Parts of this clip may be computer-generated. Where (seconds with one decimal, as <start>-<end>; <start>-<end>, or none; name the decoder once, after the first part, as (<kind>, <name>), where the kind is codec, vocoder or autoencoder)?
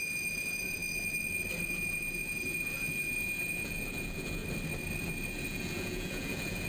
0.0-0.8 (vocoder, Vocos); 1.7-4.4; 5.3-6.7